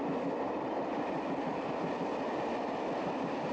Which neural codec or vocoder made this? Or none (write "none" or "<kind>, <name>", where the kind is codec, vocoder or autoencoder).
none